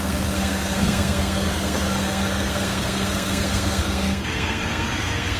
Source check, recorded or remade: remade